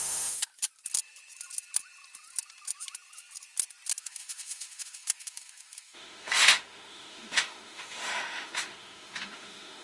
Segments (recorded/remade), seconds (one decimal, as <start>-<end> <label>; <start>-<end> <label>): 0.0-0.5 remade; 0.5-4.0 recorded; 4.0-9.8 remade